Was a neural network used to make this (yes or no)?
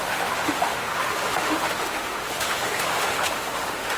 yes